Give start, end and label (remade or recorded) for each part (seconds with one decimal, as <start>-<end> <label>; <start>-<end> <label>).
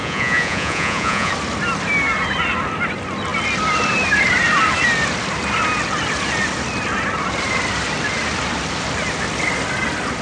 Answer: 0.0-1.3 remade; 1.3-10.2 recorded